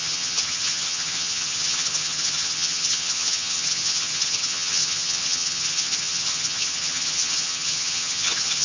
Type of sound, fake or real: fake